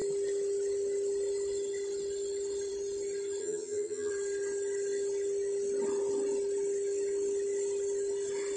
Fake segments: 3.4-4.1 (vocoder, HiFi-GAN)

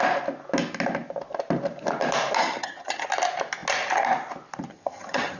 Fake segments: 2.4-3.1 (vocoder, HiFi-GAN); 4.7-5.4

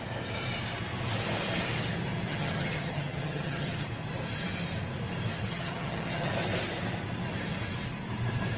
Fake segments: 2.3-3.9 (vocoder, HiFi-GAN); 5.5-6.3